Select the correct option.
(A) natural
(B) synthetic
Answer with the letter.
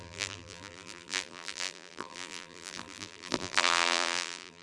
B